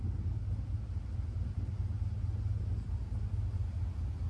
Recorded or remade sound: recorded